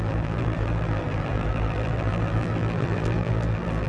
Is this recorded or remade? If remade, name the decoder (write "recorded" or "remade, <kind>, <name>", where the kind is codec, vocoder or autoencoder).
remade, vocoder, BigVGAN v2